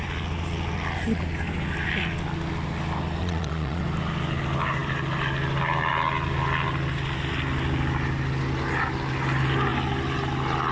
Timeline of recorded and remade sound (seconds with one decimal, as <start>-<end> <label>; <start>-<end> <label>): 0.0-3.2 recorded; 3.2-3.8 remade; 3.8-10.7 recorded